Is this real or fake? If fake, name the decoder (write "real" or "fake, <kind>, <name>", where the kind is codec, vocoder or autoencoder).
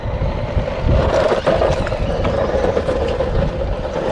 fake, vocoder, BigVGAN v2